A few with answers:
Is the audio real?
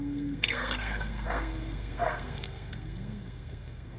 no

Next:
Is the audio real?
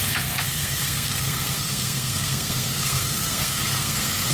no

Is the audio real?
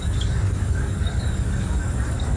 no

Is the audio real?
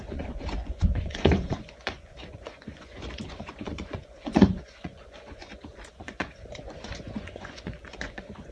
no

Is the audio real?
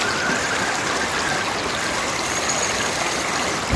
yes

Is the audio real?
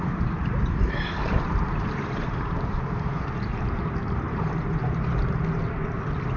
no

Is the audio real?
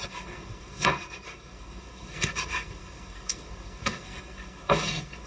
no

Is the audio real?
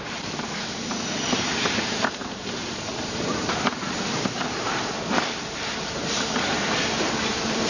no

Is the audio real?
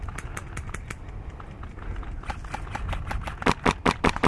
yes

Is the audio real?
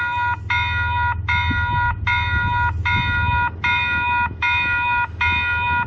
yes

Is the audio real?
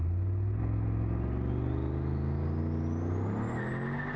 yes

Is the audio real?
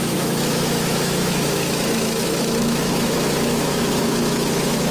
no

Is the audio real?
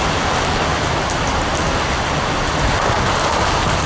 yes